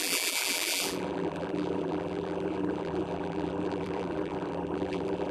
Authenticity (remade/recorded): remade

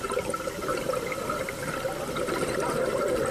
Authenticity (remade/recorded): recorded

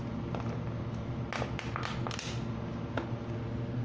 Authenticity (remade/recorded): recorded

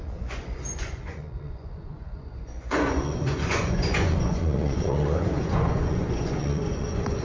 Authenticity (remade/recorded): remade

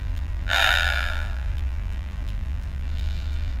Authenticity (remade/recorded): remade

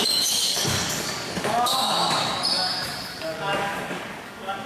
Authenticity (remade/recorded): remade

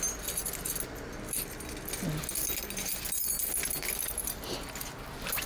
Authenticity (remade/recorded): recorded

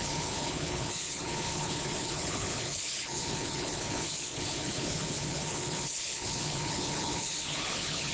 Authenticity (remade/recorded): remade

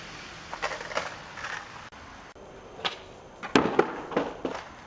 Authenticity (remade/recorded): recorded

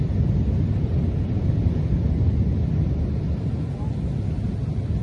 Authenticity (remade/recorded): recorded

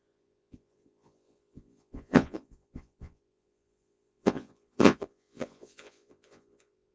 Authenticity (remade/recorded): remade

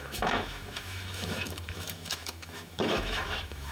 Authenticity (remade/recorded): remade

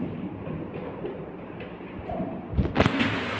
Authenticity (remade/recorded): recorded